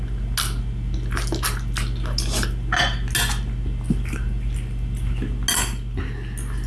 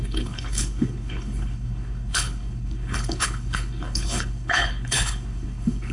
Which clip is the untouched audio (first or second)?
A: first